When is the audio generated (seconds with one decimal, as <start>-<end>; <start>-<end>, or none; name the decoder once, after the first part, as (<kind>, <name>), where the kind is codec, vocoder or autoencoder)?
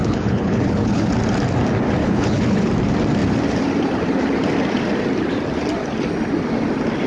0.0-1.1 (codec, HILCodec); 2.0-2.7